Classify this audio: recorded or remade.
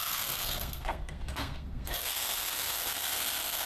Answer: remade